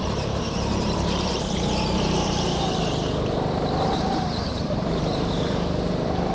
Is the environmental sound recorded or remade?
remade